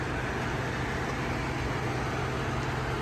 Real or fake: real